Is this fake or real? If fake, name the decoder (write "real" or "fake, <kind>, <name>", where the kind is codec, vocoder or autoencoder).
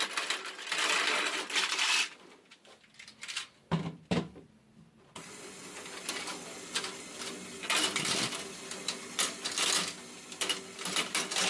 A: real